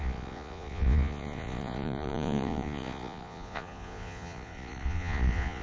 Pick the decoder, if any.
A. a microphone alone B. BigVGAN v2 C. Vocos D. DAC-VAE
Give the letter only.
C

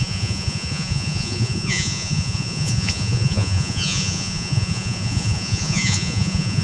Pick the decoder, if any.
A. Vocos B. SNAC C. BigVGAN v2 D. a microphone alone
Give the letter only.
A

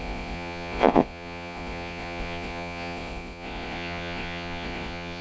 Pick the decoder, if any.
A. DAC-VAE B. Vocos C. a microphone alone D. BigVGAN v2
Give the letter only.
B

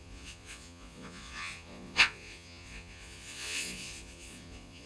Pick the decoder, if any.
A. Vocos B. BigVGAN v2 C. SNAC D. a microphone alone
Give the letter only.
A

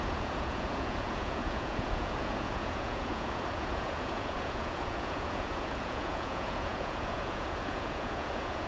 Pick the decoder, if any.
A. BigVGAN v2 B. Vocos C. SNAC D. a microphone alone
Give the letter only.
B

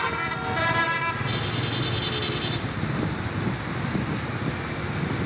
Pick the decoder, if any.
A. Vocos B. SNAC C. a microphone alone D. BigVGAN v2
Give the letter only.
C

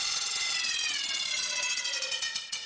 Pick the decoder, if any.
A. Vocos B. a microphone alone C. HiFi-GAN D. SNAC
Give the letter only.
A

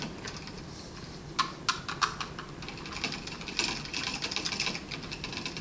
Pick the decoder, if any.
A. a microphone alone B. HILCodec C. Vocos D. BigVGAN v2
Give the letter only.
A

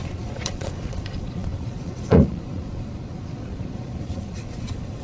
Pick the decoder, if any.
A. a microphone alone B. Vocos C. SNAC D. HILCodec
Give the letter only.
B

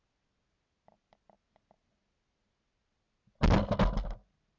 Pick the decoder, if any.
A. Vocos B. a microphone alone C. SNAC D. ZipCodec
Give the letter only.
B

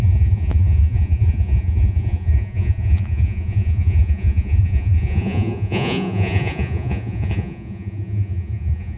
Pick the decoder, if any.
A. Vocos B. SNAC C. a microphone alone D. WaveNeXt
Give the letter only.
A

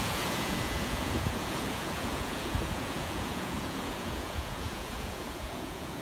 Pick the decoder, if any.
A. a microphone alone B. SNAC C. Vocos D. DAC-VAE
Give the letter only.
C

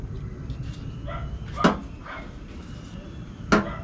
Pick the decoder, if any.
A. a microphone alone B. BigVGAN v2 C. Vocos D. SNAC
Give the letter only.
A